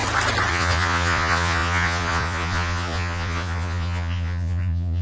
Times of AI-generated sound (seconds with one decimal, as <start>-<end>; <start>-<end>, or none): 0.5-5.0